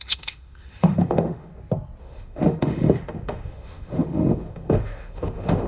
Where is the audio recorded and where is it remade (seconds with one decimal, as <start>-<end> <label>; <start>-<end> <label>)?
0.0-1.5 remade; 1.5-2.0 recorded; 2.0-5.7 remade